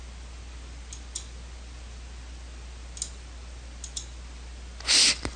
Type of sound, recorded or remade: recorded